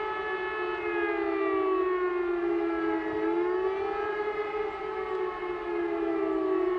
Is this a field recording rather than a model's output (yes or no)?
yes